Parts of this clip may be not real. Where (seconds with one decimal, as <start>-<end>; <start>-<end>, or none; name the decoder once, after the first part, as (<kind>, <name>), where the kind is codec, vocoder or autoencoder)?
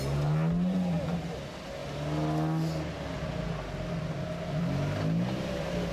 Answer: none